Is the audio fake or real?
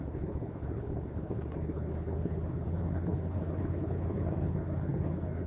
fake